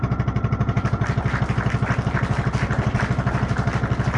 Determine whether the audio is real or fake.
real